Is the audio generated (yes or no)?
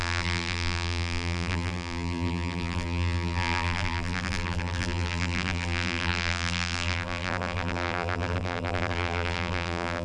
yes